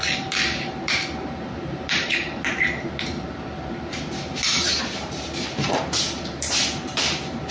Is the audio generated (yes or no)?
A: yes